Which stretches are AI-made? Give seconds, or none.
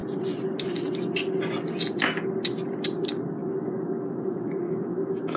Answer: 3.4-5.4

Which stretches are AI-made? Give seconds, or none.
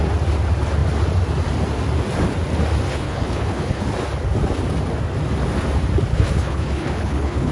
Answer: 2.9-3.8; 6.1-7.5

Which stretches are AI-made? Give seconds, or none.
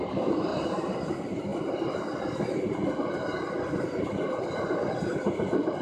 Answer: 0.5-1.1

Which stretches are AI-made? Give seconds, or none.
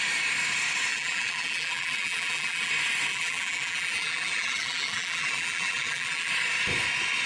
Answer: 0.9-2.7; 3.1-6.3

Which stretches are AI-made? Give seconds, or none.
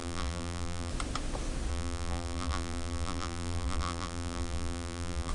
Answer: 0.0-0.9; 1.7-5.3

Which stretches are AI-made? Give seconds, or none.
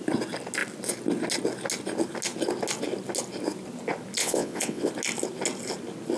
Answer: 4.2-4.9